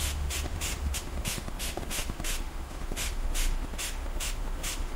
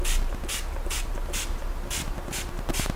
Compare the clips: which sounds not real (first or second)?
first